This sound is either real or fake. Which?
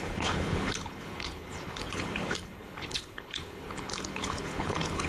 fake